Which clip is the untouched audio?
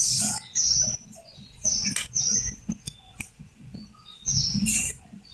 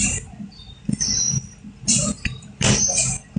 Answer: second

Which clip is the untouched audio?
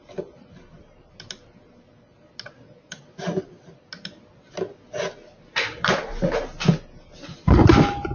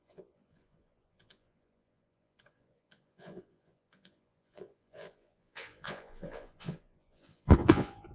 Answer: first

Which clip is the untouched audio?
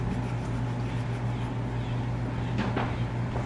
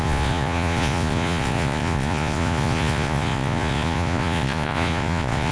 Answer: first